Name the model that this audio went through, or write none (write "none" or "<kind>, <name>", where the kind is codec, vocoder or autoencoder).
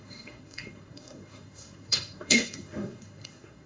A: codec, SNAC